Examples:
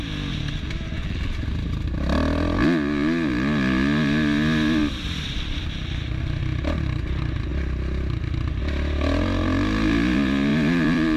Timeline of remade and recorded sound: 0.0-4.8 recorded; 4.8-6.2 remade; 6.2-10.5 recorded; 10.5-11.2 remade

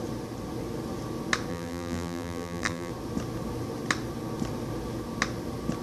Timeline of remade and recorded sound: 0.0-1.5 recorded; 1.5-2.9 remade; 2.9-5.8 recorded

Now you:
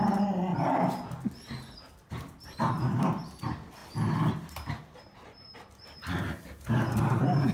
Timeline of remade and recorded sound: 0.0-0.5 remade; 0.5-2.1 recorded; 2.1-3.8 remade; 3.8-4.5 recorded; 4.5-7.5 remade